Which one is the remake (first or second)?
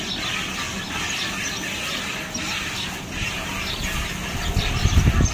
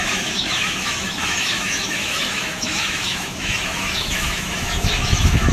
second